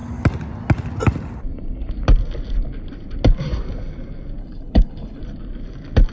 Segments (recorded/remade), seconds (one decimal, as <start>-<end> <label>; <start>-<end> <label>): 0.0-4.4 recorded; 4.4-5.2 remade; 5.2-6.1 recorded